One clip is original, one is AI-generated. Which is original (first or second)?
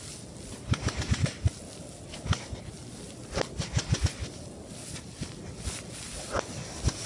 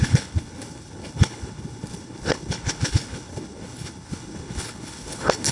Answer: first